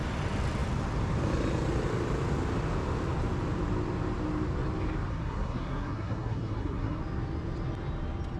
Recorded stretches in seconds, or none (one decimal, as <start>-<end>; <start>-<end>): 0.0-5.1; 7.0-8.4

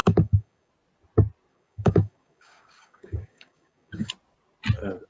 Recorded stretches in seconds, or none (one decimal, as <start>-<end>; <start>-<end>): 0.7-1.5; 4.1-5.1

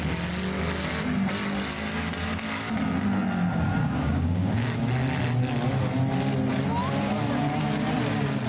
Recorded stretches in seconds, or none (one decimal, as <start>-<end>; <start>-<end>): 0.0-3.8; 4.7-8.5

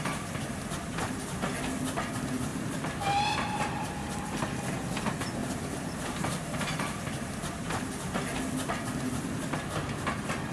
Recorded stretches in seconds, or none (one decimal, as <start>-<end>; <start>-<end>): 0.0-2.5; 3.9-5.4; 7.0-10.5

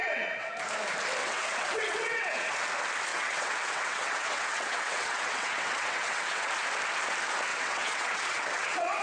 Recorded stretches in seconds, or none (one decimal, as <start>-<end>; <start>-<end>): 0.5-1.2; 2.5-3.1; 6.5-7.5

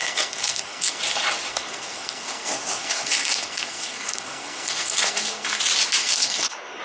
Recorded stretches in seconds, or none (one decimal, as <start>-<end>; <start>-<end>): 1.0-1.5; 5.6-6.0

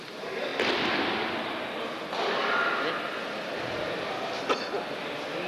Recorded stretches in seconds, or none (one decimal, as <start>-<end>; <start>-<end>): 0.0-5.5

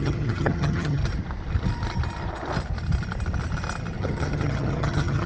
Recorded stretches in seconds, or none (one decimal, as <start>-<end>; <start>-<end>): 1.0-4.0